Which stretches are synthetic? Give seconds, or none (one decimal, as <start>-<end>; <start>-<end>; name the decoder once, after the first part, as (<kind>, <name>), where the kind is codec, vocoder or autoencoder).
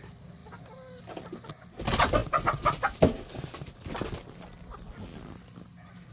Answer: none